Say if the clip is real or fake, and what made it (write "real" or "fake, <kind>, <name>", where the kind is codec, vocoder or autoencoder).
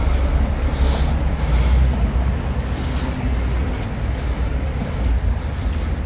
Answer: real